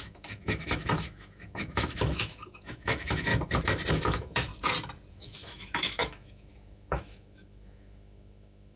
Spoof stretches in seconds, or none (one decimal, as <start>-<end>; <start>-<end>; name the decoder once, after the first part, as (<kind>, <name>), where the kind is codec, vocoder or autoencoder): 0.0-3.3 (autoencoder, DAC-VAE); 3.9-4.5; 5.1-8.8